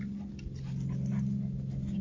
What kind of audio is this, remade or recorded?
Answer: recorded